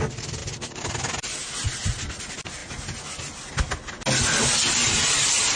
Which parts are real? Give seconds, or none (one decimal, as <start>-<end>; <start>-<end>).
0.0-5.6